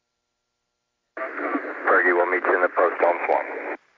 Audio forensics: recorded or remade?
recorded